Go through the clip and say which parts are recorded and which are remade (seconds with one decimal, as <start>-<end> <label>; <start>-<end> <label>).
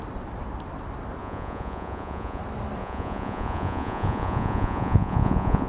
0.0-1.2 recorded; 1.2-2.4 remade; 2.4-2.8 recorded; 2.8-5.7 remade